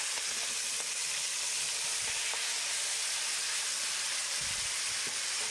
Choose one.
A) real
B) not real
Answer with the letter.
A